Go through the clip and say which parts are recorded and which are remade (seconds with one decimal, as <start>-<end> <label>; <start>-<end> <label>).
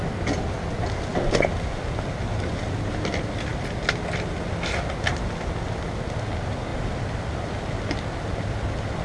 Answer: 0.0-9.0 recorded